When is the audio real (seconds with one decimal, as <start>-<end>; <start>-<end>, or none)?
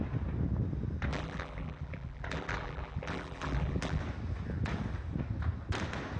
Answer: 0.0-1.1; 4.0-6.2